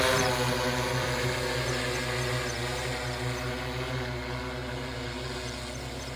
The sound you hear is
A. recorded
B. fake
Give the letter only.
A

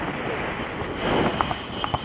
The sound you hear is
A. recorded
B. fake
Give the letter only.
A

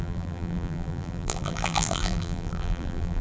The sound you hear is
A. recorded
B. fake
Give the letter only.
B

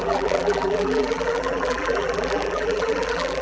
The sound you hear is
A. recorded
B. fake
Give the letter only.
B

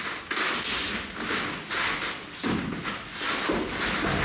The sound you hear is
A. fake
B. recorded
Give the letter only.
B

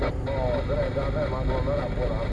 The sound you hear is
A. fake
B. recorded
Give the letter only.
B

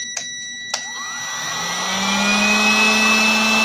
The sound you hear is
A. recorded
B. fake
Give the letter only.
A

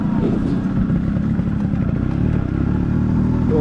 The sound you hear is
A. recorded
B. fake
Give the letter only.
A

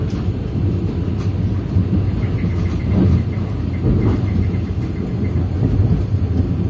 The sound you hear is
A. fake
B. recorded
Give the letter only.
B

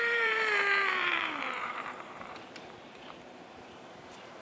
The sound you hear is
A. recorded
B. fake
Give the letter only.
B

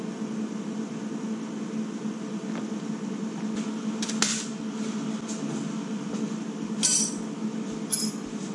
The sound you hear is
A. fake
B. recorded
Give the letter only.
B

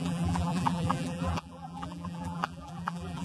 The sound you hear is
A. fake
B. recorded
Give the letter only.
A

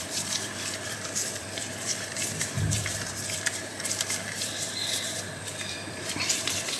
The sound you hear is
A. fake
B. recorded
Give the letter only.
A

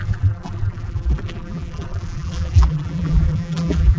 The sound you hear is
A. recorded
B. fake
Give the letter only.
B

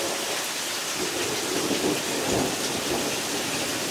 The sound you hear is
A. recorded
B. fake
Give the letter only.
A